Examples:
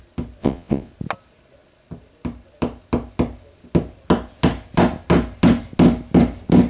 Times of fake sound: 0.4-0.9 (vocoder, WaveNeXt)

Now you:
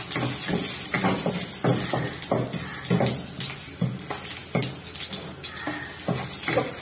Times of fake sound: none